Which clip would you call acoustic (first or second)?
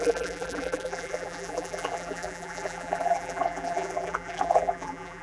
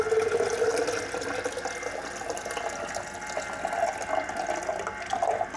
second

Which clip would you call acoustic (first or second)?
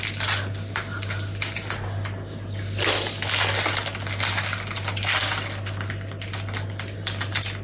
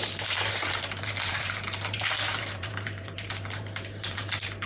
first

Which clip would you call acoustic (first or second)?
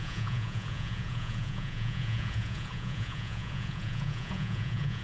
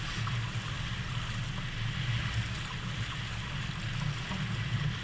second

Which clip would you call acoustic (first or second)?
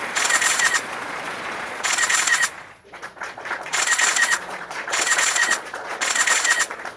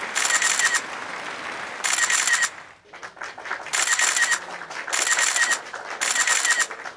second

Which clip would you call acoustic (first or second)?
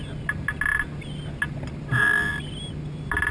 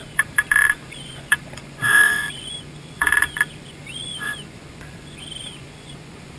first